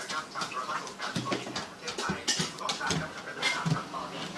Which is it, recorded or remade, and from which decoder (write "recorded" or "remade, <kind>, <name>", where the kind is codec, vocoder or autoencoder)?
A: recorded